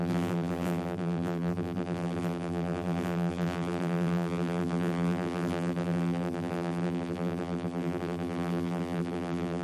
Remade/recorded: remade